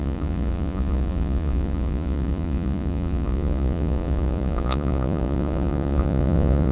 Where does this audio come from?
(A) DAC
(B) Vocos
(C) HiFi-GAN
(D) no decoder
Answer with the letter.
B